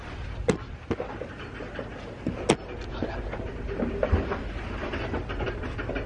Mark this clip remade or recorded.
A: recorded